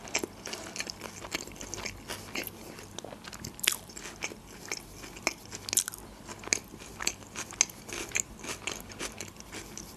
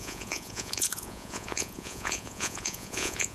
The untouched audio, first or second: first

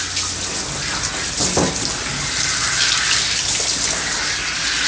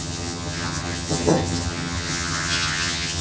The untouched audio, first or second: first